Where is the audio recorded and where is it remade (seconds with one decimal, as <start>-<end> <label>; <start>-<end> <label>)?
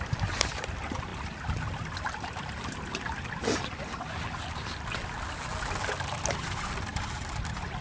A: 0.0-1.1 remade; 1.1-5.8 recorded; 5.8-7.8 remade